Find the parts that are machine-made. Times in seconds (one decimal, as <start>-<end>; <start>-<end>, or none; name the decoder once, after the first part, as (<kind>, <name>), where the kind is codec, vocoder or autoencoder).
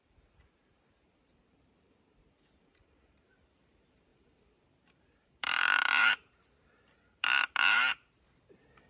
0.0-8.9 (vocoder, BigVGAN v2)